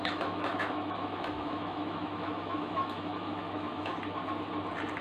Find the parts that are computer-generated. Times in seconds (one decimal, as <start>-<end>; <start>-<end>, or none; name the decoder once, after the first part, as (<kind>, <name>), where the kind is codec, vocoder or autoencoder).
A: 0.0-3.9 (autoencoder, DAC-VAE)

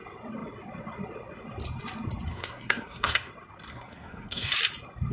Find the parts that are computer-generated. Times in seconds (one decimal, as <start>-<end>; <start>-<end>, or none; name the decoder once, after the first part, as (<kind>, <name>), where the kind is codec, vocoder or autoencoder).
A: 2.3-3.3 (codec, SNAC); 3.7-4.5